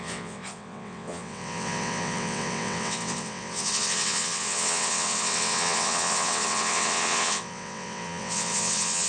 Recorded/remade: remade